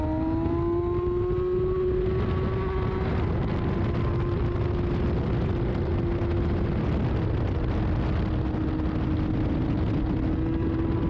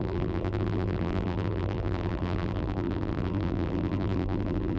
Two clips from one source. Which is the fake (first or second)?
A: second